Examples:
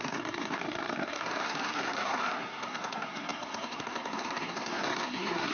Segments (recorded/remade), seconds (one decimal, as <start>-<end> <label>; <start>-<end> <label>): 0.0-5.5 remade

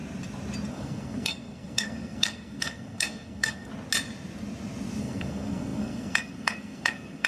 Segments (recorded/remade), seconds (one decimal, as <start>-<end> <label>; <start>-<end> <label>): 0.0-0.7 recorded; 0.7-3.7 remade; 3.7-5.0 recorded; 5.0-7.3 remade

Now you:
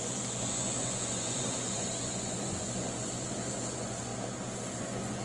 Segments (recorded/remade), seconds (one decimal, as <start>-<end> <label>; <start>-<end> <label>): 0.0-4.1 remade; 4.1-4.8 recorded; 4.8-5.2 remade

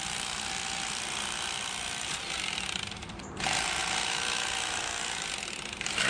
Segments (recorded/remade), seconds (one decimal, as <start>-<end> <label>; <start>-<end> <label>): 0.0-3.8 remade; 3.8-6.1 recorded